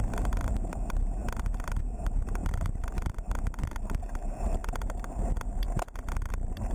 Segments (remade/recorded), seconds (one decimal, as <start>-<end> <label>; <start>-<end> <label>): 0.0-1.2 remade; 1.2-1.8 recorded; 1.8-4.6 remade; 4.6-6.3 recorded; 6.3-6.7 remade